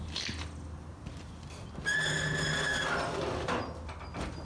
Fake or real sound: real